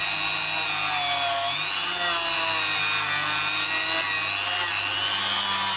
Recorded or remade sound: recorded